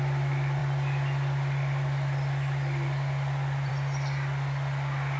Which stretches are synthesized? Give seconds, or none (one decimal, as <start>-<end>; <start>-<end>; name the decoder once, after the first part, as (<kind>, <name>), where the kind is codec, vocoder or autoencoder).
none